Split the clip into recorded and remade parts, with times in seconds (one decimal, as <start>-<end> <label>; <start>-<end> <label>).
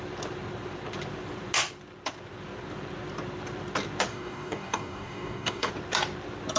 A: 0.0-4.1 recorded; 4.1-5.7 remade; 5.7-6.6 recorded